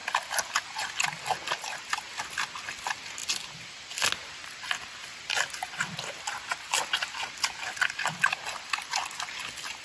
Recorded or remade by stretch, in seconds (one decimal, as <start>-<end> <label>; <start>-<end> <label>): 0.0-9.8 recorded